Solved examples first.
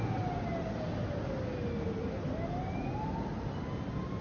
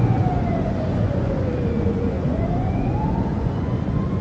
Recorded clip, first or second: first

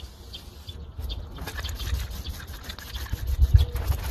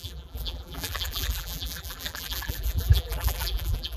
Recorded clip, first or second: first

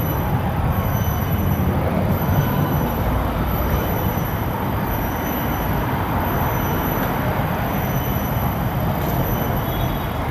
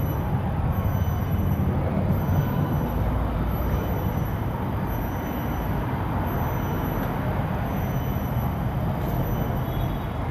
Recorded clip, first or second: second